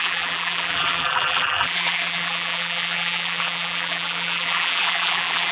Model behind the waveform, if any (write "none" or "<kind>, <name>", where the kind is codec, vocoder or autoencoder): vocoder, BigVGAN v2